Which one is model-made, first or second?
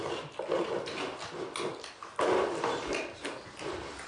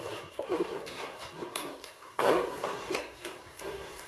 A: second